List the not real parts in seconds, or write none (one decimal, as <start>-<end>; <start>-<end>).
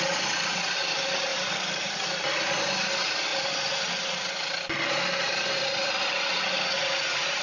1.3-2.6